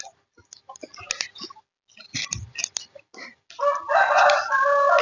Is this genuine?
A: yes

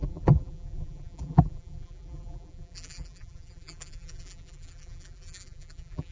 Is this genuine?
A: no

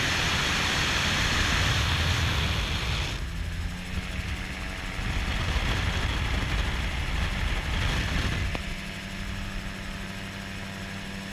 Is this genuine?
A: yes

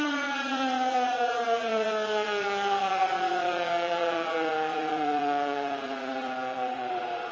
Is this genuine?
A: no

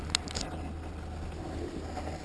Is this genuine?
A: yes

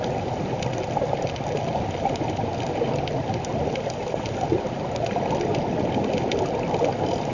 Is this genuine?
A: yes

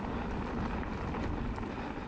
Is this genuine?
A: yes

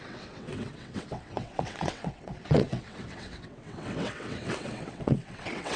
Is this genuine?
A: no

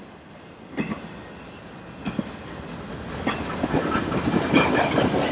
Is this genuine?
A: yes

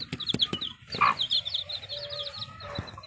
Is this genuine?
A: no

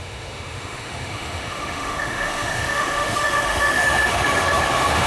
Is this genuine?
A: no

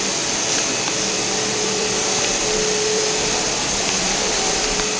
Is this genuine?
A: no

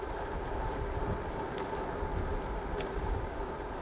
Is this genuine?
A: yes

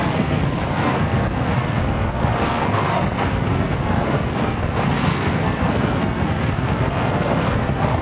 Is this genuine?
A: no